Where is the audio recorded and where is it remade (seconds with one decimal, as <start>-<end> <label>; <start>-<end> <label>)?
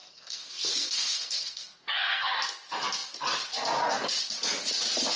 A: 0.0-2.4 remade; 2.4-5.2 recorded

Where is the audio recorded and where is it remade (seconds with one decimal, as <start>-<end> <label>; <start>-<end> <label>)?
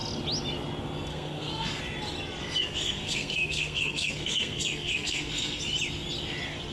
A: 0.0-1.1 recorded; 1.1-1.8 remade; 1.8-2.4 recorded; 2.4-5.6 remade; 5.6-6.7 recorded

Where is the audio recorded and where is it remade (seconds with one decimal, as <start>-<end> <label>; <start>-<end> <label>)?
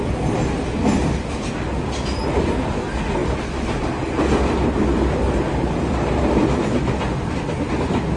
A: 0.0-8.2 recorded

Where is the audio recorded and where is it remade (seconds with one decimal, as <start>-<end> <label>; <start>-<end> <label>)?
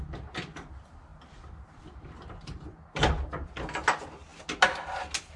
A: 0.0-5.4 recorded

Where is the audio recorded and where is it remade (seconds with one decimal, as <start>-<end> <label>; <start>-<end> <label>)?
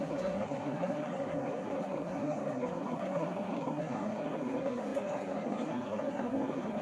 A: 0.0-6.8 remade